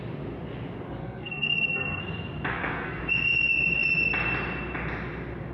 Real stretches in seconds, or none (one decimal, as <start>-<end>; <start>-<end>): 0.0-1.0; 2.0-2.5; 3.0-5.5